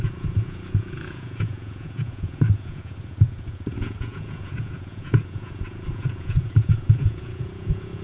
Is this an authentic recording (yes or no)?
no